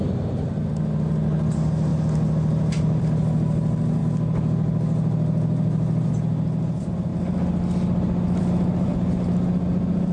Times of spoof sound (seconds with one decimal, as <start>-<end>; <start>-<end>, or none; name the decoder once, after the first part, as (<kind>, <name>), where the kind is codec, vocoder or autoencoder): none